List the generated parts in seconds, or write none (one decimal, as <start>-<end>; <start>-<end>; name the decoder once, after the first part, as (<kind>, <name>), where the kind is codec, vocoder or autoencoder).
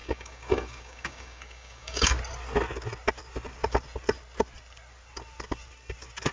0.0-2.1 (codec, DAC)